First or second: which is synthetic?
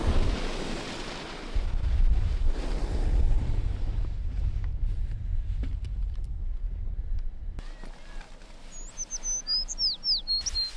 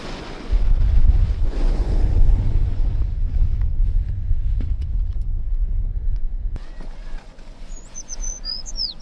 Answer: second